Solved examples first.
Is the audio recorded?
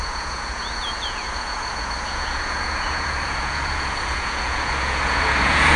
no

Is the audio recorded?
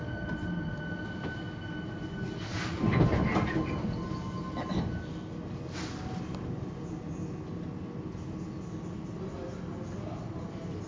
yes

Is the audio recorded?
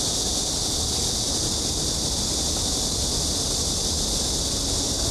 yes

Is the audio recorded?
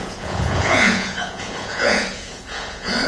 no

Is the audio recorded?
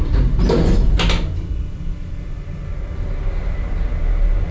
yes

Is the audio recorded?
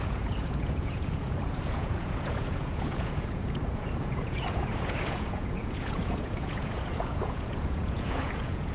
no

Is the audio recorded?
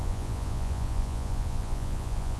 no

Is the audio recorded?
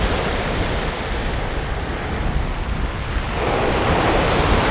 yes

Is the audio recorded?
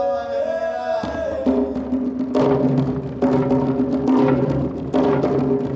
yes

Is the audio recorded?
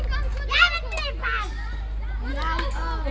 yes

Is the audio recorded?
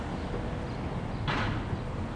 yes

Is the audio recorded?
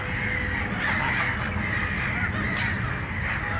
yes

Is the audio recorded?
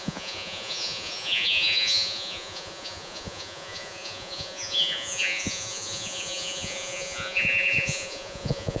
no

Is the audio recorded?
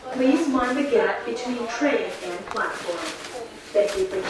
yes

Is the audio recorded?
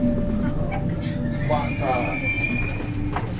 yes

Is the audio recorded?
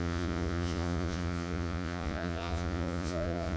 no